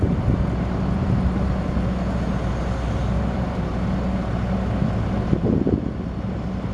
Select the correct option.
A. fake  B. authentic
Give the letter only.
B